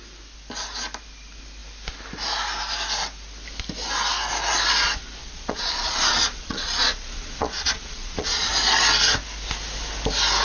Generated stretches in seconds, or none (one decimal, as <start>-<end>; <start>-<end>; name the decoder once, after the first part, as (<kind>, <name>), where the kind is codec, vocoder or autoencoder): 5.2-8.5 (vocoder, Vocos)